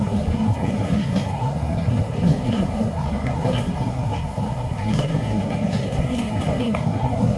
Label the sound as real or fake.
fake